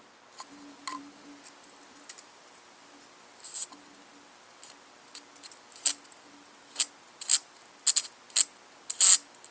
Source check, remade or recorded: recorded